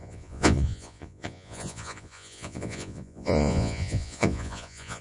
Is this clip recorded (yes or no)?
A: no